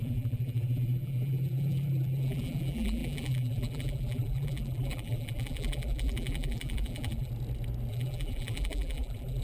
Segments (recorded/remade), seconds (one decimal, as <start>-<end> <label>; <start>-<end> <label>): 0.0-7.3 remade; 7.3-7.9 recorded; 7.9-9.4 remade